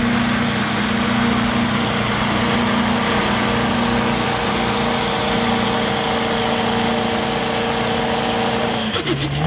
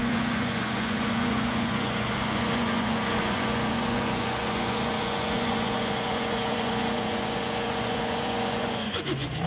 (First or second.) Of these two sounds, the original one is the first